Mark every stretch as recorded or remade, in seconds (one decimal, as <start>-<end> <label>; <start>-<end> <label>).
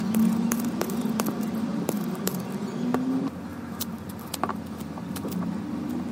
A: 0.0-1.7 recorded; 1.7-2.3 remade; 2.3-3.5 recorded; 3.5-4.0 remade; 4.0-6.1 recorded